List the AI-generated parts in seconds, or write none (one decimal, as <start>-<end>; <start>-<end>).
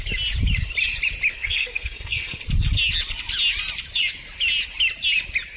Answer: 1.3-2.4